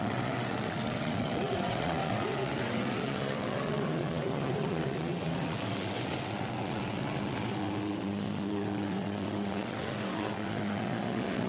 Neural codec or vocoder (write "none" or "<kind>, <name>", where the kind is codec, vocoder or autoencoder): vocoder, WaveNeXt